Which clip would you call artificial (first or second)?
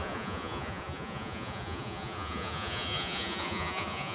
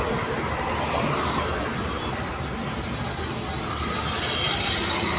first